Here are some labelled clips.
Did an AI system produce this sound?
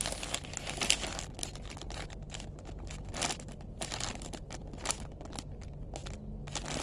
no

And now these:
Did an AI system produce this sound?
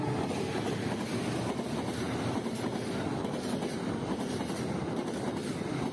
no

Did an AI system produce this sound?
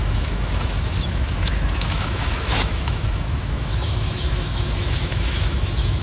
yes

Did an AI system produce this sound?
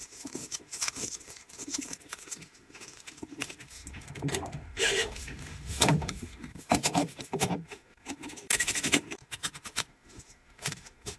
yes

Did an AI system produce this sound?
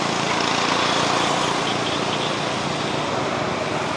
no